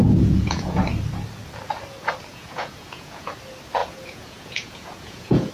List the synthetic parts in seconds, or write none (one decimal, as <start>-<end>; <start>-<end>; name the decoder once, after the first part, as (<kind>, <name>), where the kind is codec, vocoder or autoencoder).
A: 0.0-0.8 (vocoder, Vocos); 2.3-3.4; 3.8-5.5